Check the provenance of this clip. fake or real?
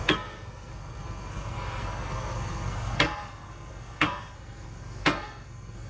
fake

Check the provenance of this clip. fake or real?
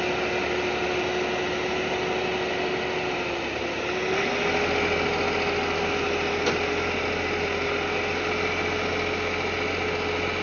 real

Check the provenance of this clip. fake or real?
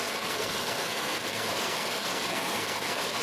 fake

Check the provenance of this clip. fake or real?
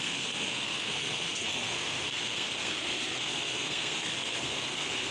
fake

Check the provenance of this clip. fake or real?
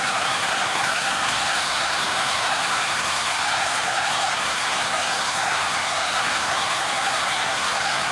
fake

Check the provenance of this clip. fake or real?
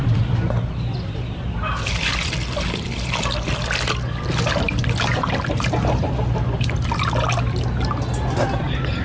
real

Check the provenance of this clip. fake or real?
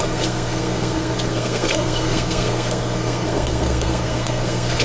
fake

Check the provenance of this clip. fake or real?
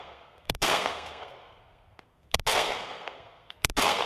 fake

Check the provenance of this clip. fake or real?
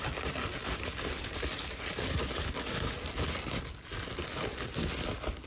real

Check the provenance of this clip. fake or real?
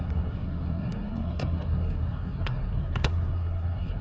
fake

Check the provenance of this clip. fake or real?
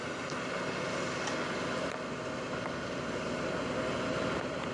real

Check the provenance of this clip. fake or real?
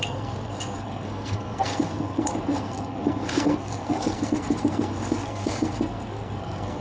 fake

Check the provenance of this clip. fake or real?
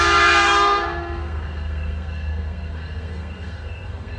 fake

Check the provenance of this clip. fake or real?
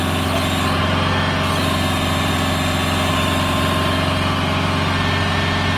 real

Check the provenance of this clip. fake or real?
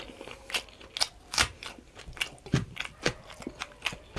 real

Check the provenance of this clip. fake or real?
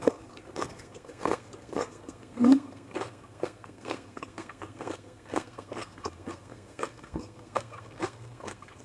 fake